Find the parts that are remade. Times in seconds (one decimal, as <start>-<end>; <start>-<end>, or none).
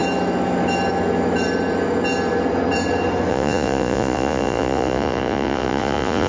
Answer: 3.3-6.3